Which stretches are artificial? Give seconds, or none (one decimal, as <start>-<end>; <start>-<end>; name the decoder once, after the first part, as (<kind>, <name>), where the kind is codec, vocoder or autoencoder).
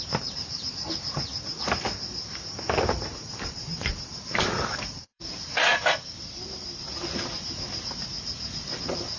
0.0-9.2 (vocoder, BigVGAN v2)